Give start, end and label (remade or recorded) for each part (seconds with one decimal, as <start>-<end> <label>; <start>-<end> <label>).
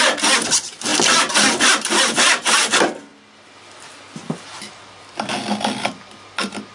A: 0.0-6.7 recorded